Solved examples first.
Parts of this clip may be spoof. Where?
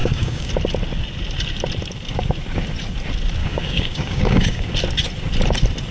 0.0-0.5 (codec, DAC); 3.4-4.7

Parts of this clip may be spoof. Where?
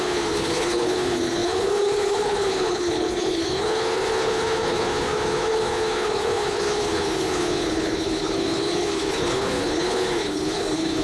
0.0-11.0 (codec, HILCodec)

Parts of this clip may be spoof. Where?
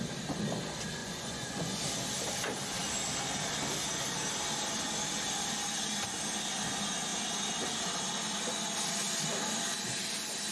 1.0-1.8 (vocoder, Vocos)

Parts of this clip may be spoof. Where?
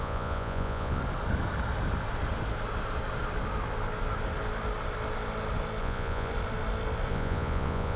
0.0-1.0 (vocoder, Vocos); 5.8-6.3; 7.1-8.0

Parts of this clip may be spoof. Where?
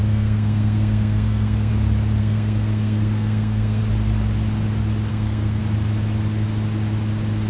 0.0-1.7 (codec, SNAC); 2.2-3.8; 5.1-5.6